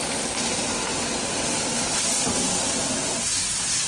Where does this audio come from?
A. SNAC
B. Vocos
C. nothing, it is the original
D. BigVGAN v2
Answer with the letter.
C